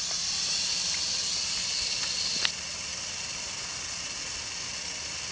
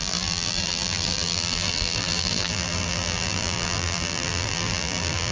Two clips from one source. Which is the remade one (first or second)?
second